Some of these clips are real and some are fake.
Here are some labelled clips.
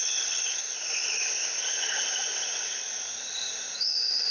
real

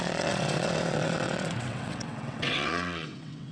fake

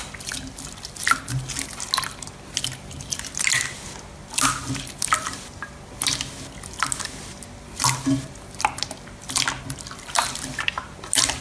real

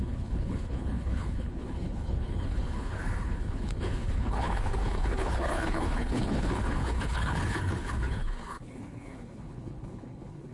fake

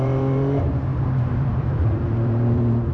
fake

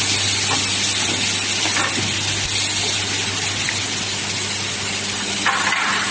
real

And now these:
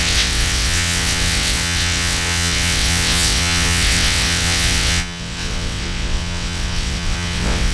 fake